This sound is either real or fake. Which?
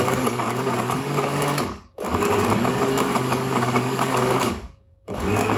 fake